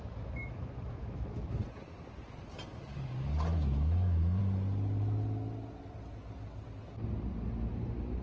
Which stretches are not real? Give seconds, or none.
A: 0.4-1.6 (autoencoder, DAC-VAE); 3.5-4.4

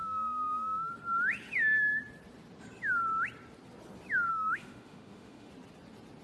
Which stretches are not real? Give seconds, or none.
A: 0.0-0.9 (autoencoder, DAC-VAE); 4.3-5.5

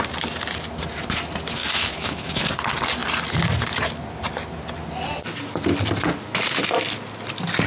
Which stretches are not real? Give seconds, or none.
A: 1.6-2.5 (autoencoder, DAC-VAE)

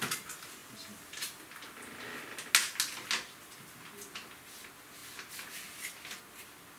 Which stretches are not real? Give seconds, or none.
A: none

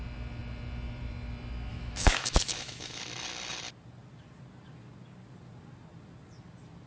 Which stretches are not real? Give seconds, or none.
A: 1.7-3.0 (autoencoder, DAC-VAE)

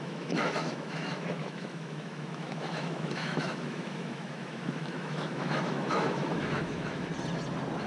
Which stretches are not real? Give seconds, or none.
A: 0.0-7.1 (autoencoder, DAC-VAE)

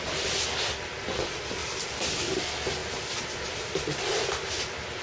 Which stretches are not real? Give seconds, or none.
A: none

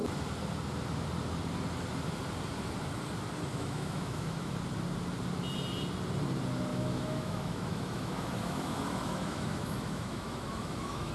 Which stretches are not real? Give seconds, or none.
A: 3.5-4.5 (autoencoder, DAC-VAE); 6.7-11.1